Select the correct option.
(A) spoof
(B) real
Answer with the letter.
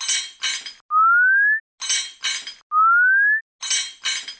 B